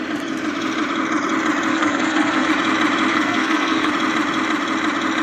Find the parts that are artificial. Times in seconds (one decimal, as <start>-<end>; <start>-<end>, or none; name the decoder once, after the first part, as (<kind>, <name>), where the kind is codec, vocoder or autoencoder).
1.7-2.5 (codec, SNAC); 3.1-3.9